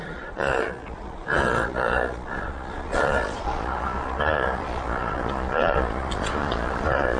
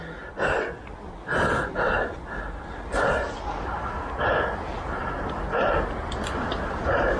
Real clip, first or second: second